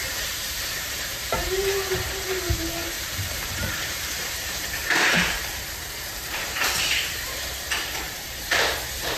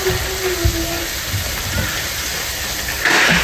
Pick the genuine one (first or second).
second